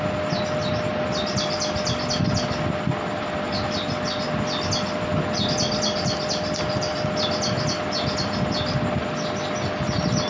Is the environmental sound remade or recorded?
recorded